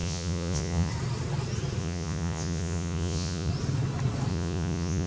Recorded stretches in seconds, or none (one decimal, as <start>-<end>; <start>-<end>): 0.9-1.8; 3.5-4.3